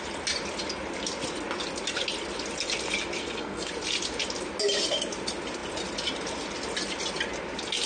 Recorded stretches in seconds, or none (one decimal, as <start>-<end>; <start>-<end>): 0.0-3.2; 3.7-7.9